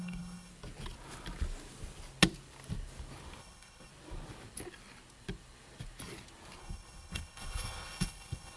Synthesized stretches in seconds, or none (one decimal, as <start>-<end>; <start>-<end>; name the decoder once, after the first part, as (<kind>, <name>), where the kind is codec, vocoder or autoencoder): 0.0-0.5 (codec, HILCodec); 3.4-3.9; 6.6-8.6